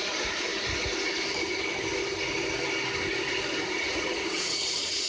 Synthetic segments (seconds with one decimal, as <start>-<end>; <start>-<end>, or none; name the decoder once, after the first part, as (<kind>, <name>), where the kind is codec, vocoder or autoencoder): 0.0-0.5 (vocoder, Vocos); 3.6-5.1